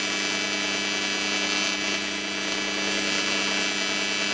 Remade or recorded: recorded